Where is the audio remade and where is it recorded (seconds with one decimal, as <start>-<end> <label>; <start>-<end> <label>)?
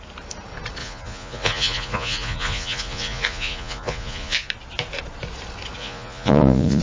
0.0-0.8 recorded; 0.8-4.5 remade; 4.5-5.8 recorded; 5.8-6.8 remade